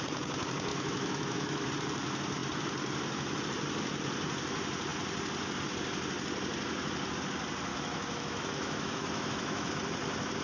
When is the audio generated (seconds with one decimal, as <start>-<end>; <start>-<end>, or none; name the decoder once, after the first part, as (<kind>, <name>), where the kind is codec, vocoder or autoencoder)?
0.7-1.7 (autoencoder, DAC-VAE); 7.7-9.7